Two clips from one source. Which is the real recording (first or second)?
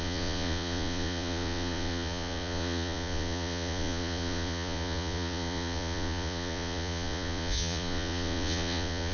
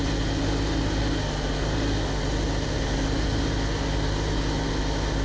second